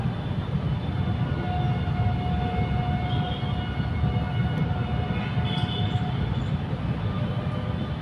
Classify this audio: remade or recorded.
recorded